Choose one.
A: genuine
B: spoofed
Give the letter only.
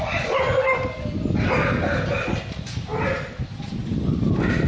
A